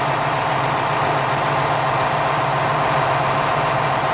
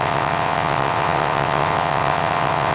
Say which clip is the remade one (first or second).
second